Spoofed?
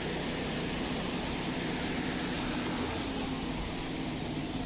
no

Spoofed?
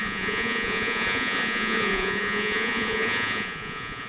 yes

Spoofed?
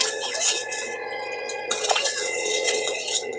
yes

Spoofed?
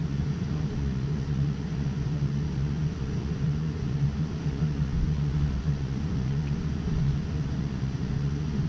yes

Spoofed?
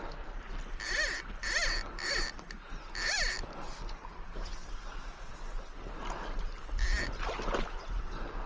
no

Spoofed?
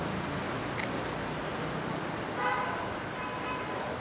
no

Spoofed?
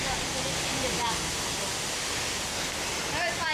no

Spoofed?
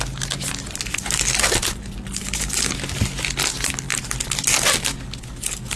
no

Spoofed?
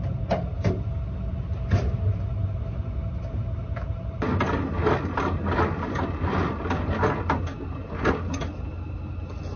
no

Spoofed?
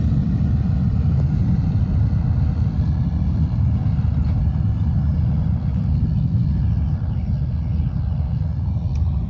no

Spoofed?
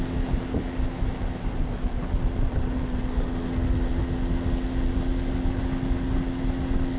no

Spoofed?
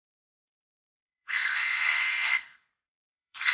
yes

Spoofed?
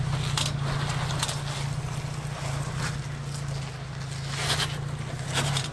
no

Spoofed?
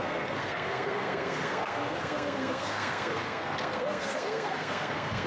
yes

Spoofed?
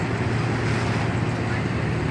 no